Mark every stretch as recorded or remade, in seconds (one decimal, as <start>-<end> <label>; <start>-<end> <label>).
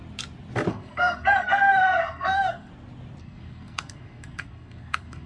0.0-0.7 recorded; 0.7-2.7 remade; 2.7-3.2 recorded; 3.2-5.3 remade